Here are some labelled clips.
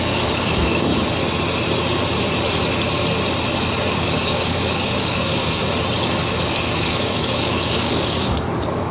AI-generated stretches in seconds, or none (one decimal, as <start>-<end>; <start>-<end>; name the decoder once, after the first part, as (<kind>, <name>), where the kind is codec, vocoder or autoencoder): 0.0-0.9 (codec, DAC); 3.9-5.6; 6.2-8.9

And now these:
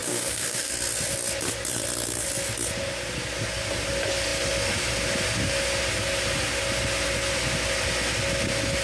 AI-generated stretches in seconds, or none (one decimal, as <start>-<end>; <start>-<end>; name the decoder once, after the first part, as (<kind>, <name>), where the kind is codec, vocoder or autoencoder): 0.0-0.7 (codec, DAC)

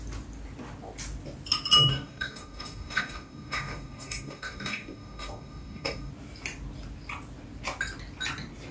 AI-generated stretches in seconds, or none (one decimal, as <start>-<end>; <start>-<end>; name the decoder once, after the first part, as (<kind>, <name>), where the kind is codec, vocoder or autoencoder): 1.9-6.1 (codec, DAC)

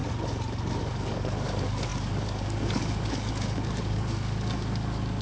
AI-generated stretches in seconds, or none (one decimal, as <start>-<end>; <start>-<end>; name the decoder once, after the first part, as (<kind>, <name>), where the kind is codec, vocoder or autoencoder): 0.8-5.2 (codec, DAC)

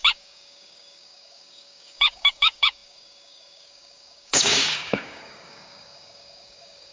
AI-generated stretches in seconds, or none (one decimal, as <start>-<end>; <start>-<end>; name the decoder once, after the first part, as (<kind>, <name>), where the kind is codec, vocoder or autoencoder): 0.0-6.9 (codec, DAC)